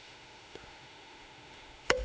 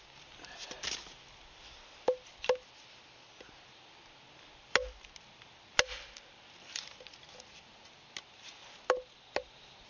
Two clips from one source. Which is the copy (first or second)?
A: first